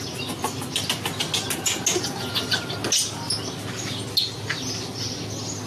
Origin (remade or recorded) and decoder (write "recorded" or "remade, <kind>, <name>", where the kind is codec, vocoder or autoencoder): recorded